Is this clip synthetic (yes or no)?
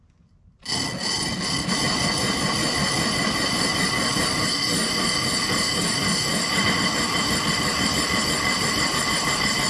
no